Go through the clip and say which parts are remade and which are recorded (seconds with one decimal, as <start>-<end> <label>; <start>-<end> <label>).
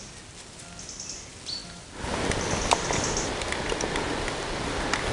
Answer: 0.0-5.1 recorded